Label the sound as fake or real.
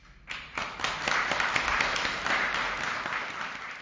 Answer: real